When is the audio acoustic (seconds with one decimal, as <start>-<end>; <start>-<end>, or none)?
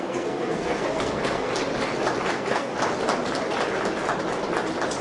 1.5-2.3; 2.7-5.0